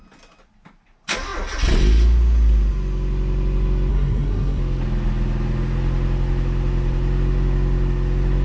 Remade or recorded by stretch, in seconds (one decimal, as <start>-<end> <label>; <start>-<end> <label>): 0.0-3.9 recorded; 3.9-4.6 remade; 4.6-8.4 recorded